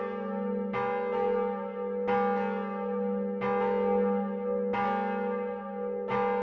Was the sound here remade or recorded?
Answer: recorded